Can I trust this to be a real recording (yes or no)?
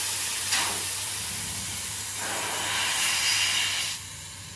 yes